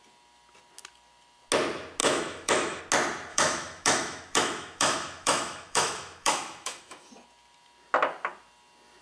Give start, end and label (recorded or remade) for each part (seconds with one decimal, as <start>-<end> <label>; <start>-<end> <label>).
0.0-2.0 recorded; 2.0-2.8 remade; 2.8-3.3 recorded; 3.3-7.1 remade; 7.1-9.0 recorded